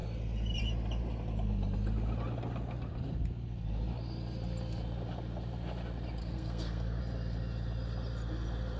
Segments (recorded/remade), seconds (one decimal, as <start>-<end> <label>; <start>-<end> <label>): 0.0-6.2 recorded; 6.2-7.0 remade; 7.0-8.8 recorded